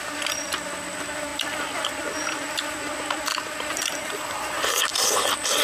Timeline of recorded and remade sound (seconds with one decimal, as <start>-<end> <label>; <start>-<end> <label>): 0.0-5.6 recorded